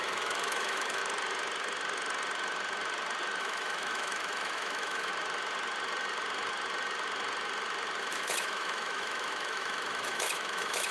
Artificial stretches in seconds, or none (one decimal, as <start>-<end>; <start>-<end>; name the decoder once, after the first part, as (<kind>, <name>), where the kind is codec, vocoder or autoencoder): 0.0-1.0 (autoencoder, DAC-VAE); 3.4-5.1; 8.0-10.9